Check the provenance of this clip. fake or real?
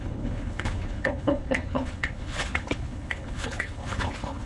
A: fake